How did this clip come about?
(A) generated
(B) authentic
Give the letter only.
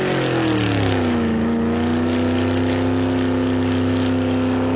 B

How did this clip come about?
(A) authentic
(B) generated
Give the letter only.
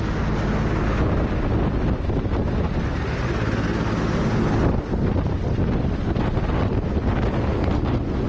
A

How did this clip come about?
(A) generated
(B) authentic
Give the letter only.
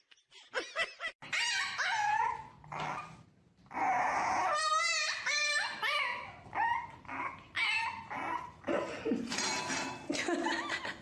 B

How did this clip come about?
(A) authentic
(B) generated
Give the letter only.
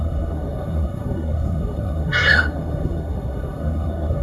B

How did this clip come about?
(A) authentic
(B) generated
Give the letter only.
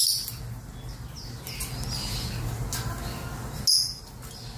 A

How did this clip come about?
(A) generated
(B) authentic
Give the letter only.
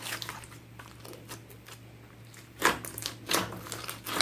B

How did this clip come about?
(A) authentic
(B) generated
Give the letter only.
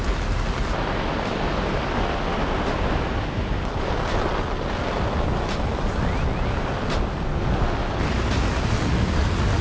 A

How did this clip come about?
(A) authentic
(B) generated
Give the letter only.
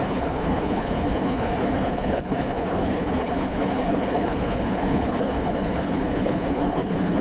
B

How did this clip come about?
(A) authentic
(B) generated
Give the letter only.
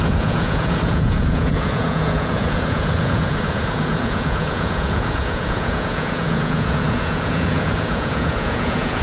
B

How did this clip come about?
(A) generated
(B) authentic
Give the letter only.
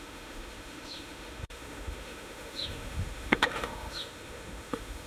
A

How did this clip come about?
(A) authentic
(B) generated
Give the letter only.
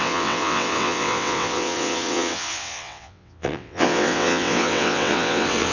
B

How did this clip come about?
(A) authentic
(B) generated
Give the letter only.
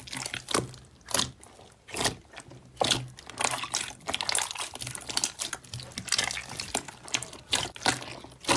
A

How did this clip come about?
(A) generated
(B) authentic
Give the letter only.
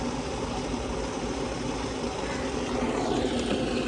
B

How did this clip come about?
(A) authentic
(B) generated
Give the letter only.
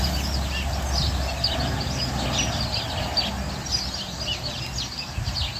A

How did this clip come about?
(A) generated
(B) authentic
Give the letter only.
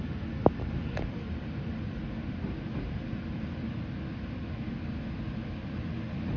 B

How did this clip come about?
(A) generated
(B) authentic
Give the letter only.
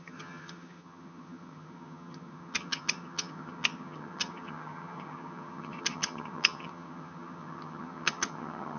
A